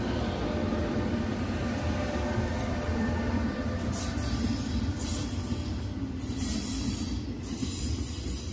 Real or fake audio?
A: real